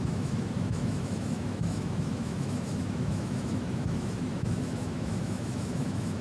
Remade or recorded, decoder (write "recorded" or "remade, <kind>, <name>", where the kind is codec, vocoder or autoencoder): remade, autoencoder, DAC-VAE